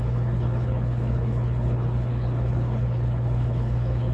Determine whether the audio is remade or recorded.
remade